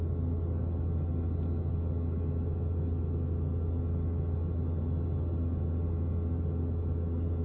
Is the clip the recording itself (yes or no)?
yes